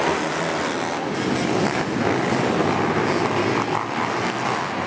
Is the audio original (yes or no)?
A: yes